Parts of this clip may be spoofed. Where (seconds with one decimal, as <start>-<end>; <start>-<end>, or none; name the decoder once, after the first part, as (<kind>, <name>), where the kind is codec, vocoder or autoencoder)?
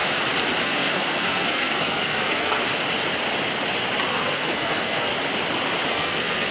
0.6-2.6 (codec, SNAC); 4.1-5.1; 5.9-6.5